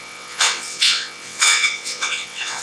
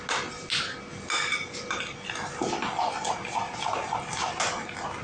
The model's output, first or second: first